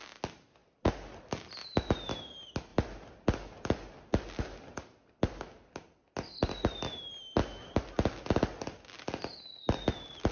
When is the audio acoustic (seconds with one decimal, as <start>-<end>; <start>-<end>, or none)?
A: 0.0-10.3